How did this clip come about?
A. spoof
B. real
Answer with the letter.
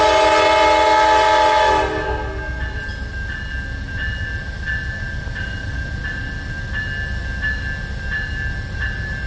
B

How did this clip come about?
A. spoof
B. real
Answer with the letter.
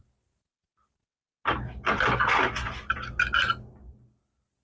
B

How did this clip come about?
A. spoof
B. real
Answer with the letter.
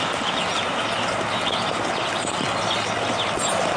B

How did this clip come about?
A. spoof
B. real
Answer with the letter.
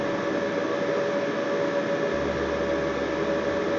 B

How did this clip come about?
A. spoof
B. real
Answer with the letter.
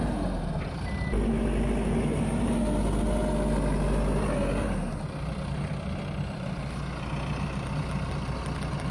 B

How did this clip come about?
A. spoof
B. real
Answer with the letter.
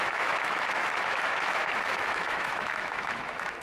A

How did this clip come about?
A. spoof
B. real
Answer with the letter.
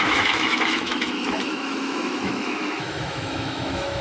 A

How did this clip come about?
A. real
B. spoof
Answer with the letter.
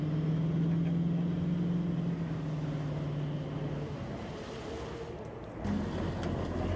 A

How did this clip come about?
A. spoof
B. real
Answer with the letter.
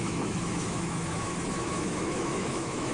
A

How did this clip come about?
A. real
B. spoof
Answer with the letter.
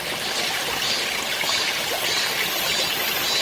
A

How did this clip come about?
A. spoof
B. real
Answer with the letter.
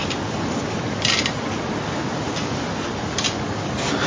B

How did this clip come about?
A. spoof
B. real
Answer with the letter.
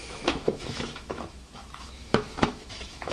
A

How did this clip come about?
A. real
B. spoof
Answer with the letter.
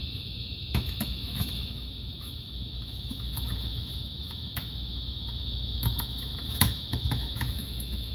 B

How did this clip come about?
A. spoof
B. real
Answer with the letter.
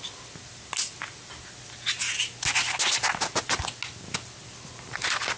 B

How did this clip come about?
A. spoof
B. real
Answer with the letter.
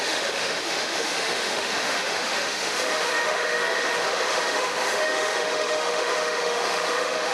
A